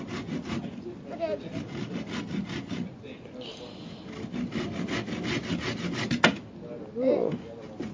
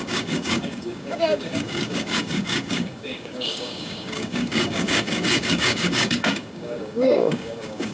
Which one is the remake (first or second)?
second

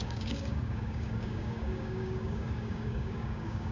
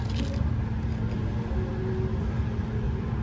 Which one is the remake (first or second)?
first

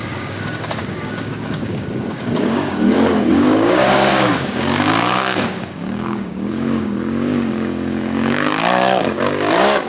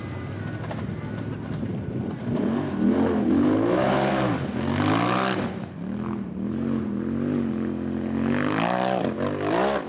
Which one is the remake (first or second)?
first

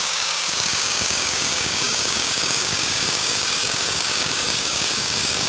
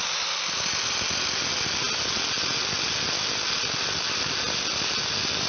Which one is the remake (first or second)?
first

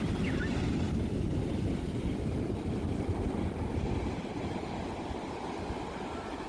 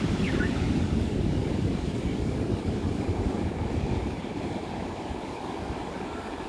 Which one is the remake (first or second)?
second